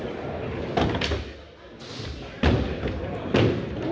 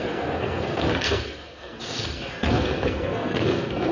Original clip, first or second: first